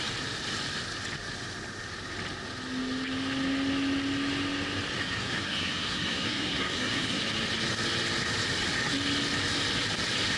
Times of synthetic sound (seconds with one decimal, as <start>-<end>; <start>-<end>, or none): 5.0-7.2